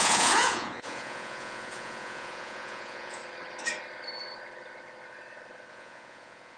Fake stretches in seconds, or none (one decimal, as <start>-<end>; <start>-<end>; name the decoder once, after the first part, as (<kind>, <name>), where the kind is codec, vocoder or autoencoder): 0.0-3.2 (vocoder, Vocos); 5.7-6.6